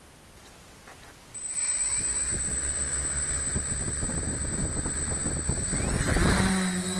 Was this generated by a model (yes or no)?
no